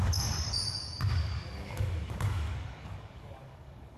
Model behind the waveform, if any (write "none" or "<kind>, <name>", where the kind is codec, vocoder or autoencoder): codec, DAC